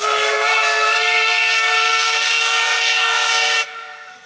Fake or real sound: fake